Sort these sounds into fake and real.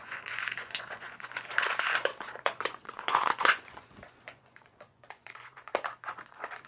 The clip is fake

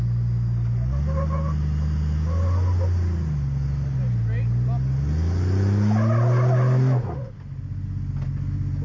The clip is real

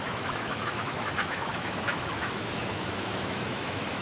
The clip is fake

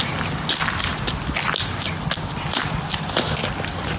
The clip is real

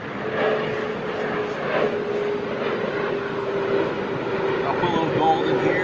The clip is real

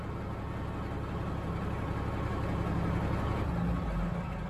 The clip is real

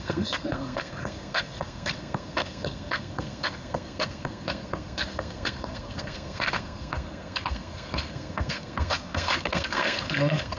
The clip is fake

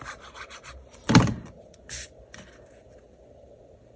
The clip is fake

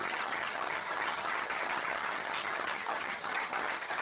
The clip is fake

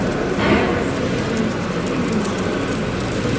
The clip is real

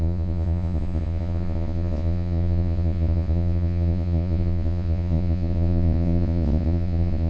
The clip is fake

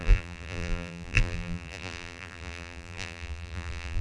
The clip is fake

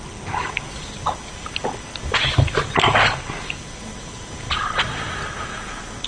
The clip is real